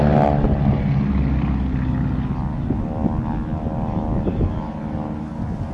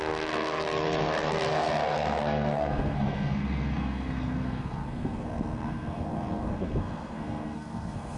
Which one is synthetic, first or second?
second